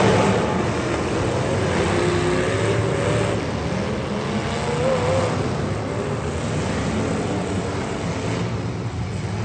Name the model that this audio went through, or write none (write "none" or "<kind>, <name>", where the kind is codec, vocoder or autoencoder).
none